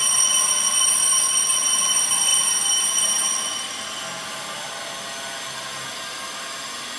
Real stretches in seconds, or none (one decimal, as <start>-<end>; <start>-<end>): 0.0-7.0